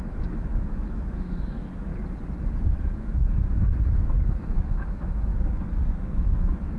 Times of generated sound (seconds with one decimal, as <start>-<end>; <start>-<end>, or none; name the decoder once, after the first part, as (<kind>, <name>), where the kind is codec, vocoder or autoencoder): 0.0-1.9 (autoencoder, DAC-VAE); 2.7-5.3; 6.2-6.8